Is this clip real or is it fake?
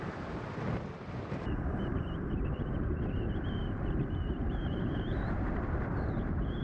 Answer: fake